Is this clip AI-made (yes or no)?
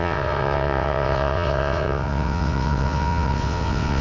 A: yes